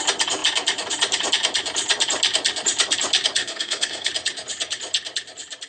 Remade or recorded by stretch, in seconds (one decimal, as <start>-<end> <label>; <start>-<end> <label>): 0.0-3.4 recorded; 3.4-4.1 remade; 4.1-5.7 recorded